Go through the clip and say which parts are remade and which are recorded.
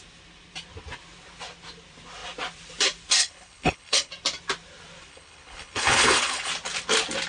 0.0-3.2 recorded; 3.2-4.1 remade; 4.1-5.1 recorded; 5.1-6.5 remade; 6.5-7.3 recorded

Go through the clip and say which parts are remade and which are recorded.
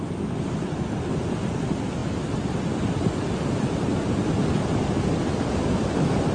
0.0-6.3 recorded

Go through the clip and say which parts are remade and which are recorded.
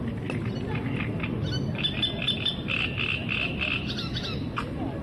0.0-5.0 recorded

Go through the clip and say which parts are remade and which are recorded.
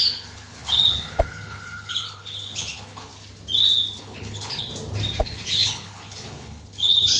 0.0-3.1 remade; 3.1-4.0 recorded; 4.0-4.7 remade; 4.7-5.2 recorded; 5.2-7.2 remade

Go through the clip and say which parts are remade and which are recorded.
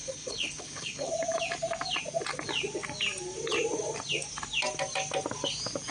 0.0-1.1 remade; 1.1-5.9 recorded